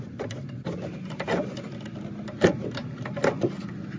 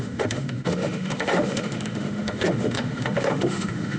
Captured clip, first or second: first